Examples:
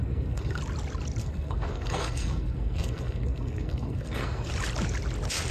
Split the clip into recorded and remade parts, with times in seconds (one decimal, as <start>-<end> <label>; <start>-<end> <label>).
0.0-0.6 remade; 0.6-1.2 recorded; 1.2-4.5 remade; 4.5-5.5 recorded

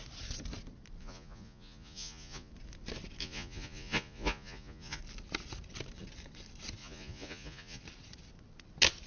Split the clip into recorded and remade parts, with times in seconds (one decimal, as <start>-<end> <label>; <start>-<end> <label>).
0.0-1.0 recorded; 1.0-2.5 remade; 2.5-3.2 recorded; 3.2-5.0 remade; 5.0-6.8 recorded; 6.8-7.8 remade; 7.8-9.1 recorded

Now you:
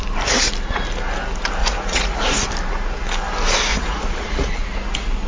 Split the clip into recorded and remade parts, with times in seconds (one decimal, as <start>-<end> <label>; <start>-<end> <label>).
0.0-1.6 recorded; 1.6-2.2 remade; 2.2-3.7 recorded; 3.7-4.5 remade; 4.5-5.3 recorded

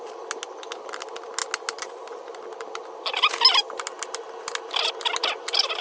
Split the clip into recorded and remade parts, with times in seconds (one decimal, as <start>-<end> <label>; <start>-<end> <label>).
0.0-5.8 recorded

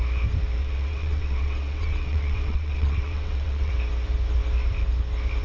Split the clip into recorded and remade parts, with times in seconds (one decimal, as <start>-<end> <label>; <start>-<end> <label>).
0.0-0.6 recorded; 0.6-3.7 remade; 3.7-5.4 recorded